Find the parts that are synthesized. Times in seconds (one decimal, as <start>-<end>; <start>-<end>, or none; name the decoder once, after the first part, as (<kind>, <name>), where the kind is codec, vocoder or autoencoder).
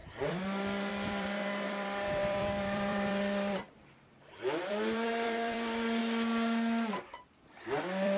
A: 0.0-6.0 (vocoder, BigVGAN v2); 7.6-8.2